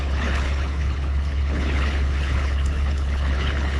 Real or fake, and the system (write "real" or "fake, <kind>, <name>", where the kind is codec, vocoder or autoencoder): fake, codec, HILCodec